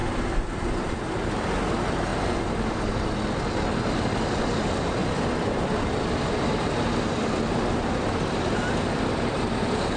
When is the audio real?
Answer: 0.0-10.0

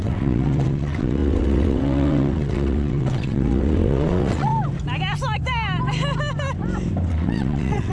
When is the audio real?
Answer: 4.5-7.1

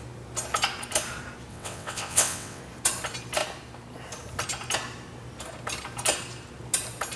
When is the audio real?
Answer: 0.0-1.5; 2.6-7.2

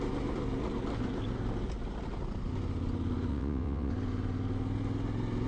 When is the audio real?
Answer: 0.0-3.3; 3.9-5.5